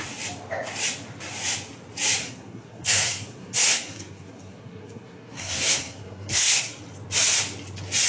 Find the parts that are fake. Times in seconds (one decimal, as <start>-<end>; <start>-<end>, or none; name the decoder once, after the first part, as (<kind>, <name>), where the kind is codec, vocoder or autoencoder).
2.2-6.7 (codec, SNAC)